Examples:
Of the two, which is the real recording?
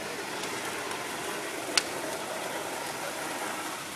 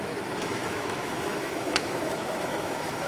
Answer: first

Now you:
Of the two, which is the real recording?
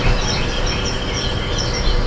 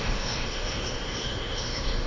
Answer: first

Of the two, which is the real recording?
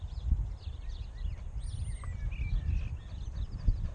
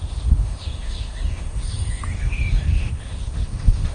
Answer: first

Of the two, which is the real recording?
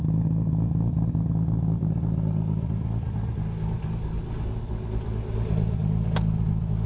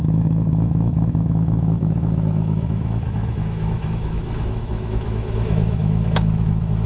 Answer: first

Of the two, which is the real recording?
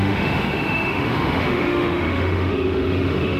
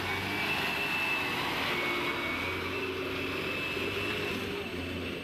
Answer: second